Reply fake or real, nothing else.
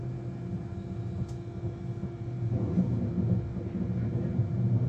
real